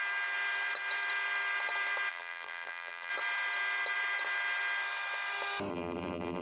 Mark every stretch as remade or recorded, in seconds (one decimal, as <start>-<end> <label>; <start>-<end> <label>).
0.0-2.1 recorded; 2.1-3.1 remade; 3.1-5.7 recorded; 5.7-6.4 remade